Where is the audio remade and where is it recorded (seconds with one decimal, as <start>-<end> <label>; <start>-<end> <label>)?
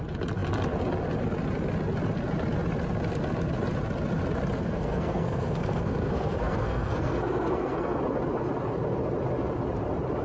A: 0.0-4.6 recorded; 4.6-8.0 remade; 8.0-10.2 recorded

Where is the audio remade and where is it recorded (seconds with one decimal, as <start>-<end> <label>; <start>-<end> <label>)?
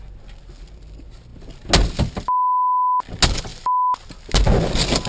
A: 0.0-5.1 recorded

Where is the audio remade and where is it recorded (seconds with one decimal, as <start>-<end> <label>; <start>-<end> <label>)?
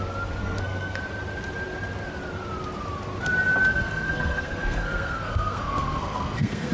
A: 0.0-0.4 recorded; 0.4-1.0 remade; 1.0-3.7 recorded; 3.7-6.7 remade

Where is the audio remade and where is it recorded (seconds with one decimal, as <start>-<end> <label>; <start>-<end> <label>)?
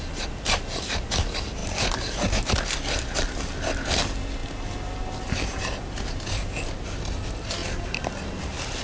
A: 0.0-8.8 recorded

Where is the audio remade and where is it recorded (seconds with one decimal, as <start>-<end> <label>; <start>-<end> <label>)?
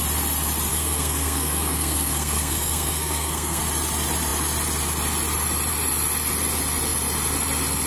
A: 0.0-0.7 recorded; 0.7-3.6 remade; 3.6-7.9 recorded